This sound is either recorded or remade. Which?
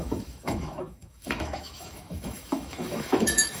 remade